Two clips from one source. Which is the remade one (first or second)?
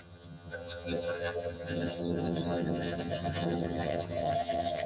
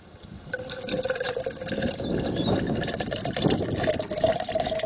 first